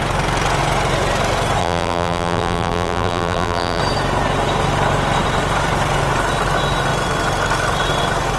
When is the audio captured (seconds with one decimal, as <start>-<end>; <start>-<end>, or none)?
0.0-1.6; 3.8-8.4